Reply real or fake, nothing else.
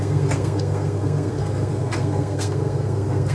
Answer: fake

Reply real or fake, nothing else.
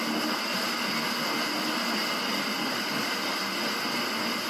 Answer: real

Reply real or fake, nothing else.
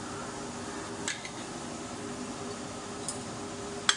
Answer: real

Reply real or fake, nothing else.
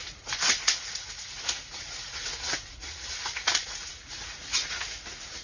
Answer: fake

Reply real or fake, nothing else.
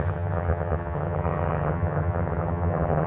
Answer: fake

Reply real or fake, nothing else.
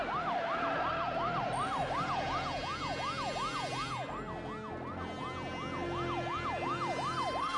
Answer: real